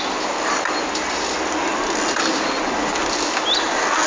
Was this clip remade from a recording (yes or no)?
no